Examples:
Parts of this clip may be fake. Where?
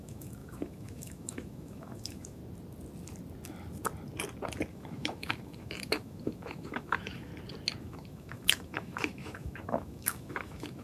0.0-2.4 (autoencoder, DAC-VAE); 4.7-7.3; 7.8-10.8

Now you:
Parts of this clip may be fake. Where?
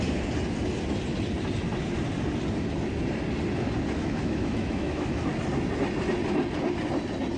4.0-5.3 (autoencoder, DAC-VAE)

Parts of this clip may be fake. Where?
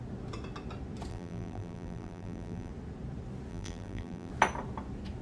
1.1-2.7 (vocoder, BigVGAN v2); 3.5-4.3